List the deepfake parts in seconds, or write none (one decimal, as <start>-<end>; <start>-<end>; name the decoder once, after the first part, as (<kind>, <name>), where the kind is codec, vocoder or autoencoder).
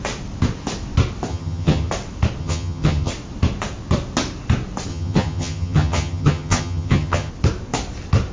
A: 1.3-1.9 (vocoder, HiFi-GAN); 2.4-3.1; 4.9-7.3